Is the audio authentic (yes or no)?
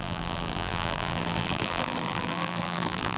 no